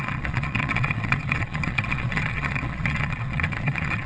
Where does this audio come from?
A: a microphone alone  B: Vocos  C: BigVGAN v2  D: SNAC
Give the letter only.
B